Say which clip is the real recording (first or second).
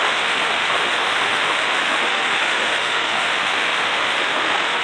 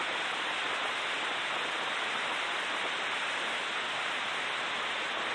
second